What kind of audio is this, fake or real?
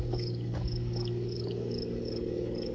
fake